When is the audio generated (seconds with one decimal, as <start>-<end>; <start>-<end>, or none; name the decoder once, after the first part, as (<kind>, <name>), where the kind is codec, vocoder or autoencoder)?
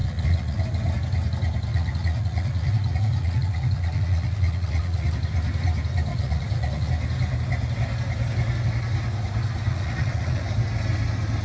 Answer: 0.0-0.6 (vocoder, Vocos); 1.7-5.1; 6.1-6.9; 9.7-10.4